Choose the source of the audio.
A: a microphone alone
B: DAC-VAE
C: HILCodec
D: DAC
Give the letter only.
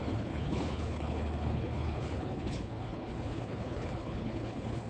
C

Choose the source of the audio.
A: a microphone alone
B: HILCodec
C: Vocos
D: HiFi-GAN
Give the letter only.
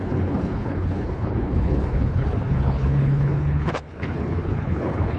B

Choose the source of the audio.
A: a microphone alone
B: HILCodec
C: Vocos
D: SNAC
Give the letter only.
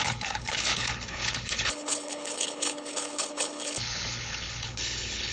B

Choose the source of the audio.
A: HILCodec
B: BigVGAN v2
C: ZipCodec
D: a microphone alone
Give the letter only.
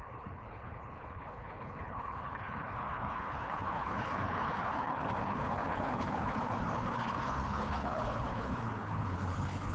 A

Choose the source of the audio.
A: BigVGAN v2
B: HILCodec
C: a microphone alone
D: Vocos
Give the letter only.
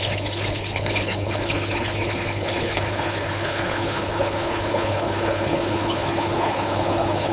B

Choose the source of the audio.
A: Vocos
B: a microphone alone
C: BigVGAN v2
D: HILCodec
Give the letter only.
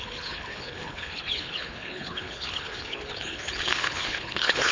D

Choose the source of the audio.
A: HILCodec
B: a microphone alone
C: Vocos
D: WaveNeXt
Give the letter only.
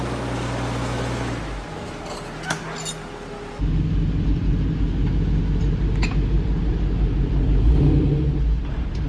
B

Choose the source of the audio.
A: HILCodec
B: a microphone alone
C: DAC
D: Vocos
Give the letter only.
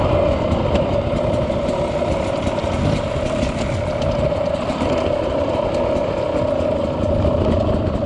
B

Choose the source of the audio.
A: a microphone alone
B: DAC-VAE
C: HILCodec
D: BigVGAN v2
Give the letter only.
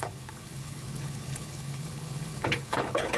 C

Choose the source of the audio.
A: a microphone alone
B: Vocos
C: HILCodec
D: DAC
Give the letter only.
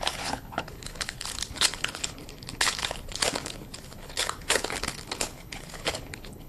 C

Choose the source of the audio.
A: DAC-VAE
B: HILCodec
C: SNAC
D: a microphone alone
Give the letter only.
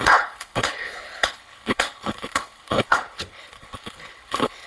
B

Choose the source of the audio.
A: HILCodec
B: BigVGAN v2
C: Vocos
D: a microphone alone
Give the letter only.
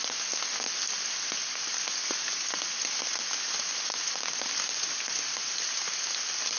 D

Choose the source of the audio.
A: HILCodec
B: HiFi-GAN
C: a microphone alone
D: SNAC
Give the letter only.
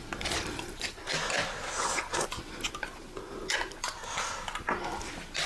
C